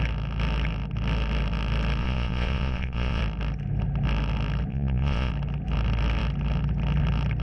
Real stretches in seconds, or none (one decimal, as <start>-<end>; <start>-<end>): 0.0-2.0; 3.2-4.7; 5.3-7.4